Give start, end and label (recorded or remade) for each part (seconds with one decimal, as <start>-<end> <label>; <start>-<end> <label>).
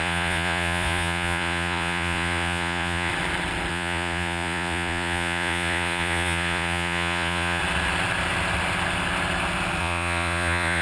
0.0-3.1 remade; 3.1-3.7 recorded; 3.7-7.6 remade; 7.6-9.8 recorded; 9.8-10.8 remade